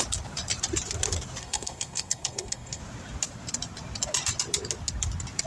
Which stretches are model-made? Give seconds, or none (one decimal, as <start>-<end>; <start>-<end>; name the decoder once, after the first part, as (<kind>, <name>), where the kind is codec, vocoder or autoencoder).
1.4-2.8 (codec, SNAC)